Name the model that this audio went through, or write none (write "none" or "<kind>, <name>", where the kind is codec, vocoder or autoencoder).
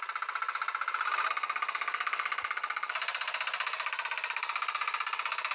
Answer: none